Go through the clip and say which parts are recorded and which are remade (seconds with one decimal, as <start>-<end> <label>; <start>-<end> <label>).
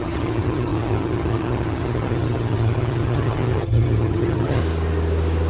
0.0-4.6 remade; 4.6-5.5 recorded